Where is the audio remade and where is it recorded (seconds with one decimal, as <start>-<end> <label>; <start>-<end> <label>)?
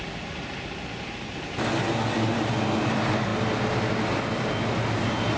0.0-5.4 recorded